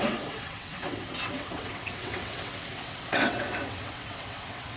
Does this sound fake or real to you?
fake